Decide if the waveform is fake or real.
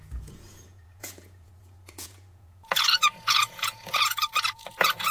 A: fake